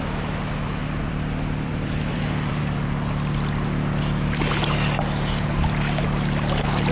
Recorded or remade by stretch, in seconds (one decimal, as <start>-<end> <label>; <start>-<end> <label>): 0.0-0.8 recorded; 0.8-2.6 remade; 2.6-6.9 recorded